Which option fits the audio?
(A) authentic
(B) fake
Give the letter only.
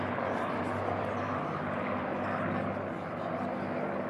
A